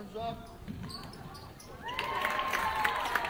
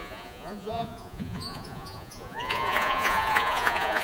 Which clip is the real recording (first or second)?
first